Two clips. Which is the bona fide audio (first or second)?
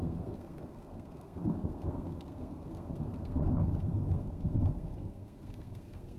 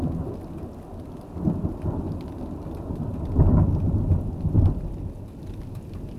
second